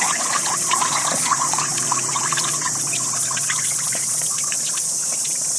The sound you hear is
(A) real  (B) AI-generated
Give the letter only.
B